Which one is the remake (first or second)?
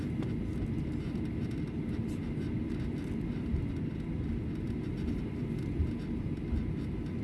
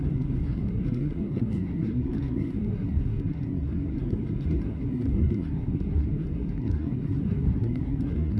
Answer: second